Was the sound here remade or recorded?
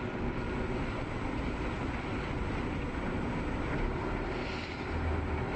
recorded